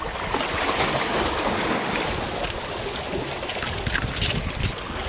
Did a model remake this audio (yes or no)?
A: no